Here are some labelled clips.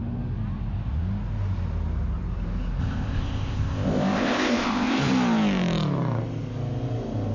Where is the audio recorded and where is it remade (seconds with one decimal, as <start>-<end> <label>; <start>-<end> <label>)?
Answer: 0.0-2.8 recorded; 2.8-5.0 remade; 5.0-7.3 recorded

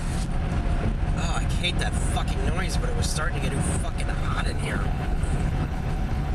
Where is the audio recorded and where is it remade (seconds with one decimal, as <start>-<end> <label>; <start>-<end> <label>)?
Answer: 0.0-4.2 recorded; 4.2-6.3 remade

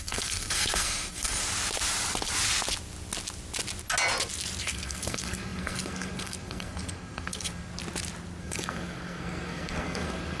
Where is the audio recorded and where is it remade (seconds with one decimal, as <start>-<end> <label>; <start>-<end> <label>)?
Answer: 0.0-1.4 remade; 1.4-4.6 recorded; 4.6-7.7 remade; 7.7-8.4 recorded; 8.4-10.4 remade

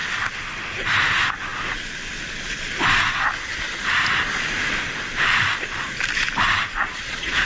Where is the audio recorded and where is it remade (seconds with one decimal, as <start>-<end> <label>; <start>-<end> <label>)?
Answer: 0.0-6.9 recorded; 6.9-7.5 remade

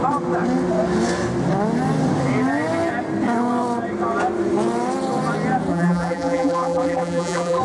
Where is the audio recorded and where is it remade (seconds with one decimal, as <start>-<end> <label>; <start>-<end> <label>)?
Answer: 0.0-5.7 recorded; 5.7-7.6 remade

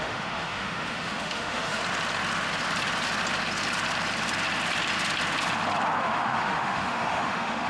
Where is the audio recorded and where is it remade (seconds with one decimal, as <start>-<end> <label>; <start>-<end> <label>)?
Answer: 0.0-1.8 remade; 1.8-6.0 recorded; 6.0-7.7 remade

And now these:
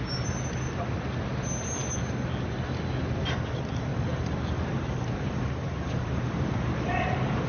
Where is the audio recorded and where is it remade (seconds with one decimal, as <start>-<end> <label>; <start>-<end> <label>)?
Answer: 0.0-3.9 recorded; 3.9-7.5 remade